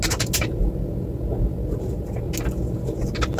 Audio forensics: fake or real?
real